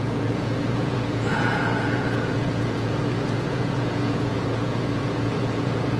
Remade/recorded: remade